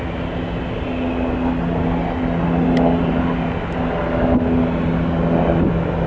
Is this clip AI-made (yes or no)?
no